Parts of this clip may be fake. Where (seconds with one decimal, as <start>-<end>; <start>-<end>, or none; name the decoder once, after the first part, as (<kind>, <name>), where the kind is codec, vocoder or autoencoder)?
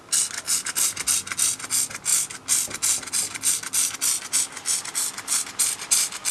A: none